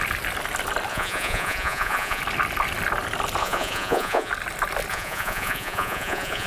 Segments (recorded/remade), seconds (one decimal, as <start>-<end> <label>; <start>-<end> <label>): 0.0-0.9 recorded; 0.9-2.2 remade; 2.2-3.4 recorded; 3.4-4.3 remade; 4.3-4.9 recorded; 4.9-6.5 remade